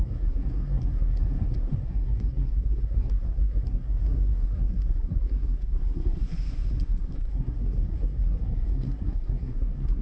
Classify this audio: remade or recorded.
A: remade